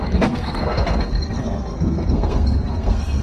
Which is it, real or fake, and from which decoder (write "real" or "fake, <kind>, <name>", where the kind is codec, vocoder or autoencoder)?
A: fake, codec, SNAC